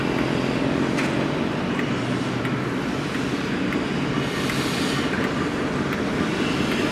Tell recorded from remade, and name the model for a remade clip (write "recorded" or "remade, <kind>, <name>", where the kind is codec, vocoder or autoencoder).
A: recorded